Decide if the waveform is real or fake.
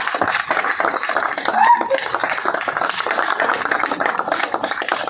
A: fake